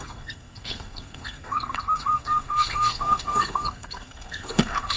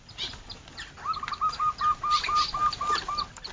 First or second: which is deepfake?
first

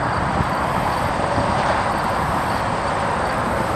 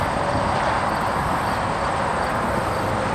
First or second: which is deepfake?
first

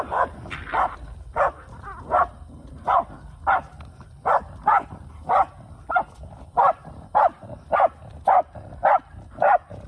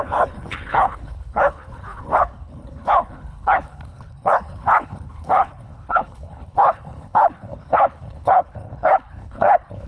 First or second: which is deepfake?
second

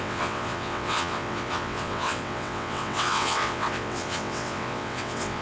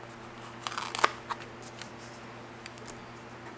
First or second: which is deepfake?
first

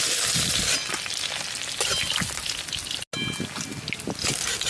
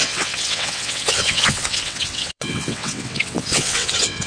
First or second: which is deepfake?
second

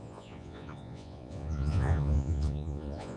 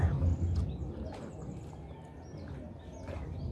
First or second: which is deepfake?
first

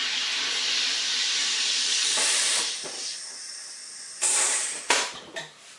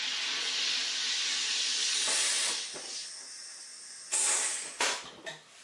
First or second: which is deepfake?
first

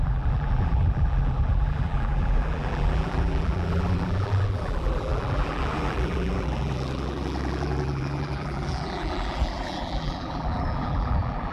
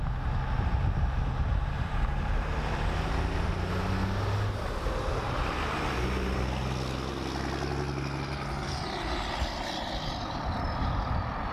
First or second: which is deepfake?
first